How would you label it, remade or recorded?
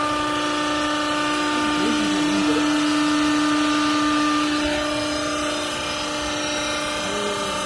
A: recorded